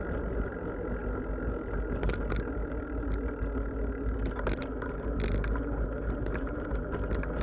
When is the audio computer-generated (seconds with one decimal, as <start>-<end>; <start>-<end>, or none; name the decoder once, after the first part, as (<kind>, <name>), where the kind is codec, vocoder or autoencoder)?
none